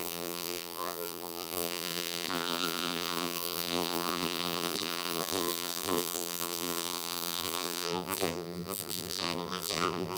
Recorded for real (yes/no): no